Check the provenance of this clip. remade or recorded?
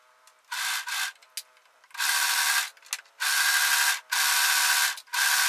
recorded